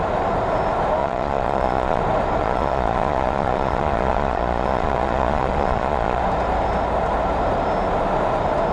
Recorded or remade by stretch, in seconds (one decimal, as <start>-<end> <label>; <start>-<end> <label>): 0.0-1.0 recorded; 1.0-2.0 remade; 2.0-2.4 recorded; 2.4-6.2 remade; 6.2-8.7 recorded